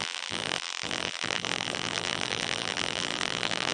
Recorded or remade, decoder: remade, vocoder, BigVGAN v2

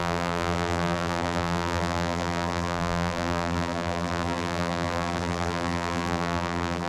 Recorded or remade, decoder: remade, vocoder, BigVGAN v2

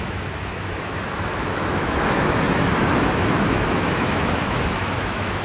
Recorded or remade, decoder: remade, autoencoder, DAC-VAE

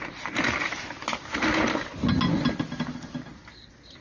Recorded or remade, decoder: recorded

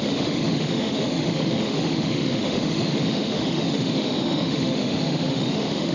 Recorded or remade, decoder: remade, autoencoder, DAC-VAE